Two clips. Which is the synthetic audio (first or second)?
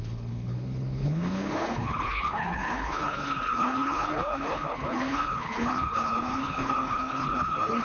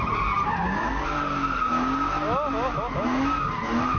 first